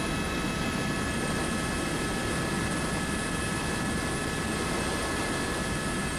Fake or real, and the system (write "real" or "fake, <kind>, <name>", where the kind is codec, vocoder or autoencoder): real